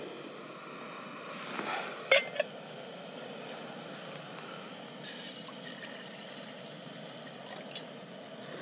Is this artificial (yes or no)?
no